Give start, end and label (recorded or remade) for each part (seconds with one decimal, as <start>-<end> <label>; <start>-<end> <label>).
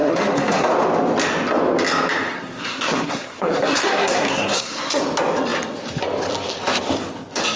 0.0-0.6 remade; 0.6-2.3 recorded; 2.3-5.0 remade; 5.0-7.6 recorded